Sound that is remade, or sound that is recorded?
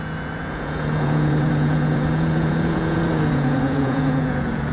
remade